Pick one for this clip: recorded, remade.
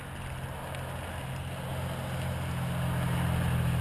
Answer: recorded